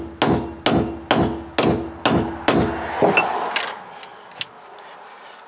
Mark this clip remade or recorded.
recorded